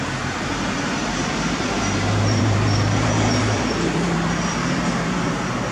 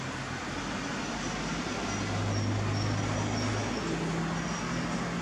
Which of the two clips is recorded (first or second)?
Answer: second